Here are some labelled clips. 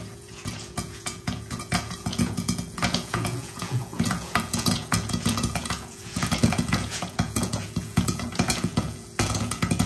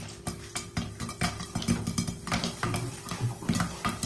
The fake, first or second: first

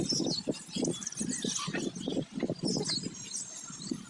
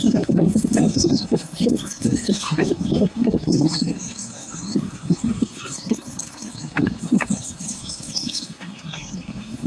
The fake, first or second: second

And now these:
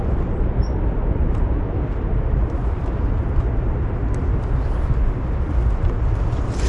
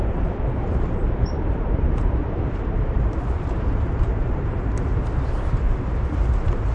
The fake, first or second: second